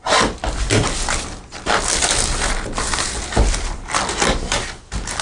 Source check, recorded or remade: recorded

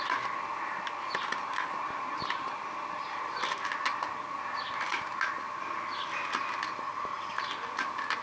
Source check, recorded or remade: recorded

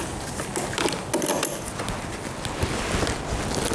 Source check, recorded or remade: recorded